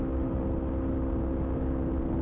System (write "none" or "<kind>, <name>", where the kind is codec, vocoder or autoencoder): none